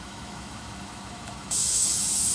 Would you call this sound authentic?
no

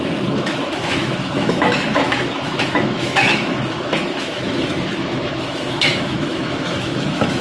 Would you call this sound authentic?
no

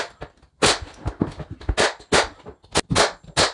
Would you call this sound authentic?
yes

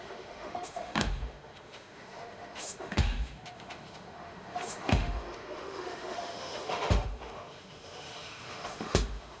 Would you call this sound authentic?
no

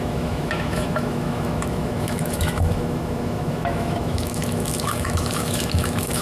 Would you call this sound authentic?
no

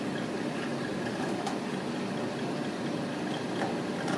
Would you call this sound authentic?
yes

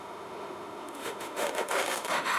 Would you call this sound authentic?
no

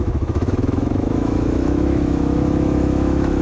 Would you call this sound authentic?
no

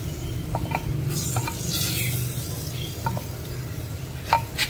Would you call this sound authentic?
yes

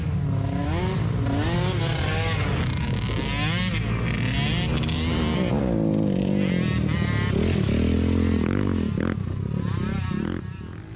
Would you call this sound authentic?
yes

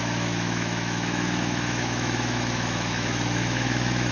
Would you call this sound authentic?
no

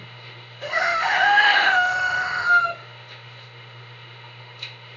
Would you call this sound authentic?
no